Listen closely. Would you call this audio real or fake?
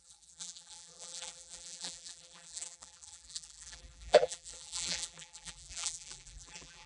fake